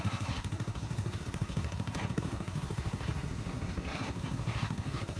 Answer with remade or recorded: remade